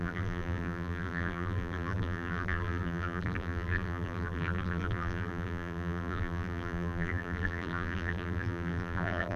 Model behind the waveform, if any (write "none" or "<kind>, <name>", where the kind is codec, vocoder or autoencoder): vocoder, BigVGAN v2